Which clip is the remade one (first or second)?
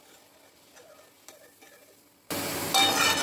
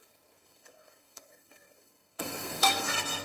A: second